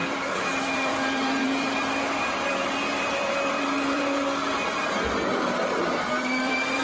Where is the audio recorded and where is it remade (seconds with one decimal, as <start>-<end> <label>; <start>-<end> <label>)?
0.0-4.4 remade; 4.4-5.3 recorded; 5.3-6.8 remade

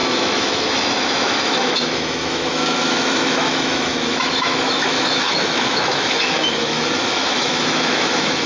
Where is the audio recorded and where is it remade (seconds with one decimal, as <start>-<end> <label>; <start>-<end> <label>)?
0.0-8.5 remade

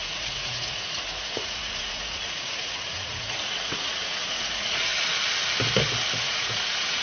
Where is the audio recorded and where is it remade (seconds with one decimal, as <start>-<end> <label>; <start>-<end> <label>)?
0.0-4.9 remade; 4.9-6.2 recorded; 6.2-7.0 remade

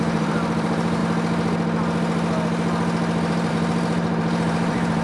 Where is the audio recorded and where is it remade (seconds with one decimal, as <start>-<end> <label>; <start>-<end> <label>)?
0.0-1.0 remade; 1.0-3.5 recorded; 3.5-5.0 remade

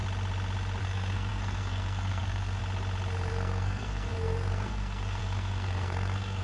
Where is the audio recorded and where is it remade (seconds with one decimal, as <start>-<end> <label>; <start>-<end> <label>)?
0.0-0.8 recorded; 0.8-2.6 remade; 2.6-3.3 recorded; 3.3-6.4 remade

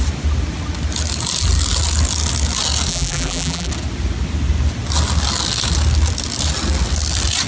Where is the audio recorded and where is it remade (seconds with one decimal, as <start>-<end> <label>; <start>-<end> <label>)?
0.0-2.9 recorded; 2.9-3.7 remade; 3.7-7.5 recorded

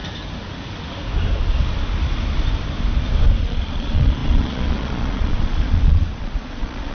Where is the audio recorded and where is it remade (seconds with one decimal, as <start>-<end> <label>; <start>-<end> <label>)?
0.0-3.4 recorded; 3.4-6.9 remade